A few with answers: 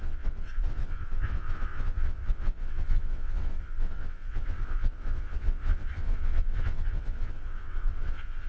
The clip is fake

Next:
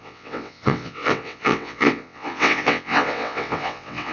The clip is fake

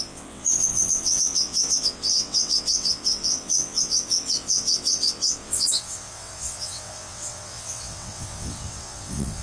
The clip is fake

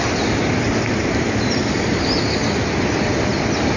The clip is real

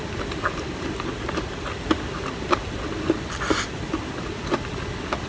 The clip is real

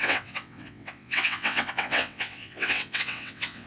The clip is fake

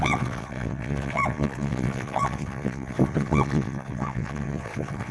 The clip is fake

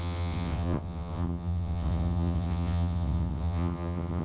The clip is fake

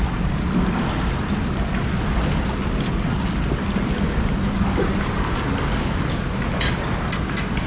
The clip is real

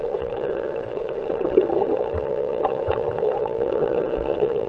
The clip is fake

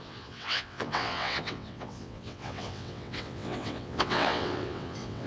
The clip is fake